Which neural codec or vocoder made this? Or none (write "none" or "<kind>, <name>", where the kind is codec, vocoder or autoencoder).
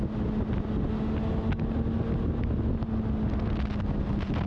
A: none